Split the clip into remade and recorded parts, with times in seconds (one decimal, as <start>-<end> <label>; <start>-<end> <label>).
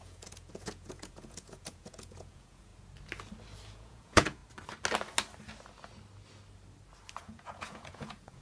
0.0-2.7 remade; 2.7-3.7 recorded; 3.7-4.4 remade; 4.4-7.2 recorded; 7.2-8.4 remade